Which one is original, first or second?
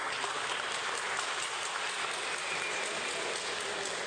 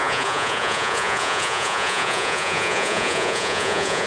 first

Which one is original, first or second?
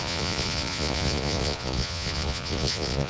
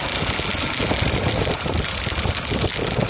second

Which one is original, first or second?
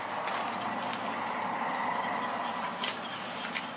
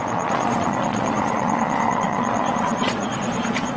first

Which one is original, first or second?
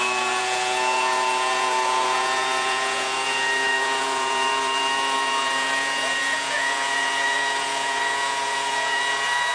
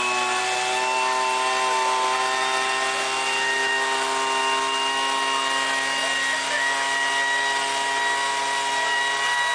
second